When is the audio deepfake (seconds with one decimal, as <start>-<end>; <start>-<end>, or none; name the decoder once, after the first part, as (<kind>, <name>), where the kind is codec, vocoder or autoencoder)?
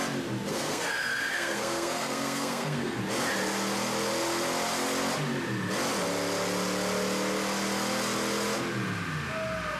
0.5-3.0 (codec, SNAC)